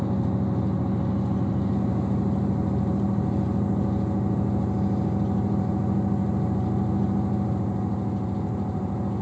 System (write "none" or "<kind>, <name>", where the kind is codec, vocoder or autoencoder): none